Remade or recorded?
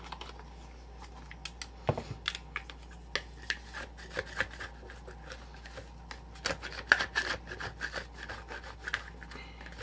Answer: recorded